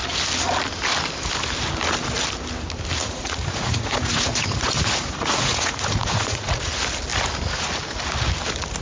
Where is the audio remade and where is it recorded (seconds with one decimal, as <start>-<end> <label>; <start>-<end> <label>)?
0.0-3.0 recorded; 3.0-6.6 remade; 6.6-8.8 recorded